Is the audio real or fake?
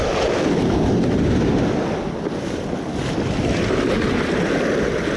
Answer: real